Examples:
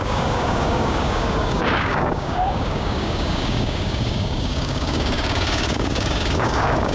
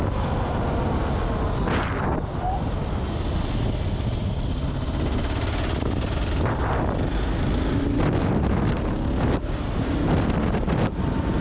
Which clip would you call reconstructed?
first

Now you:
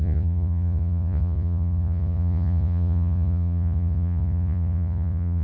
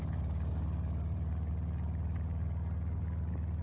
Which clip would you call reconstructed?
first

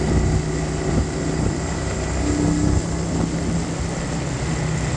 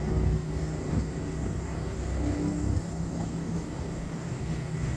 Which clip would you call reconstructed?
second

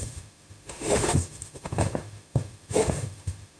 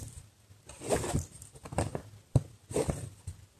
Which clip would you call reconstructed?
first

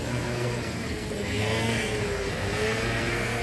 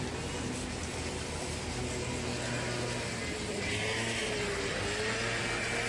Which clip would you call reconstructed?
first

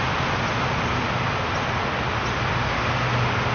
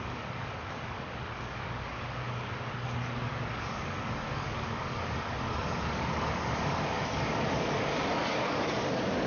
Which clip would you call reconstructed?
second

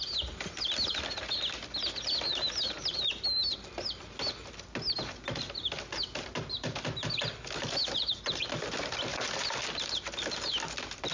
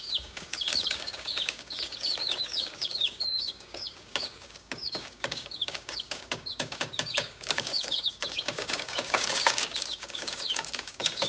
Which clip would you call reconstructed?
second